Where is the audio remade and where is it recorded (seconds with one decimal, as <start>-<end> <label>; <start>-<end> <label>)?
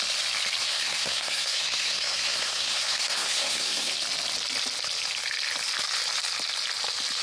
0.0-0.6 recorded; 0.6-3.9 remade; 3.9-7.2 recorded